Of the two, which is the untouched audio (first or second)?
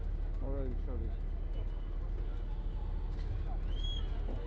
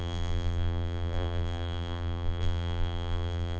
first